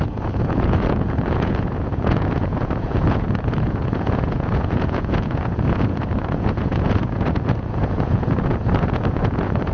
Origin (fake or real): fake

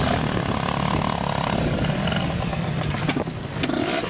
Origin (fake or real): real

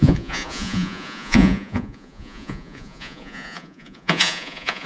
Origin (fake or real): fake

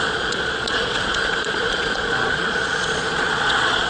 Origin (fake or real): fake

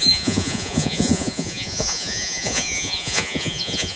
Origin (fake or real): fake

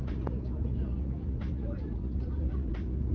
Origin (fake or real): fake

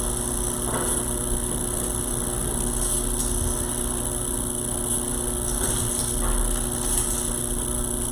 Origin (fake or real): real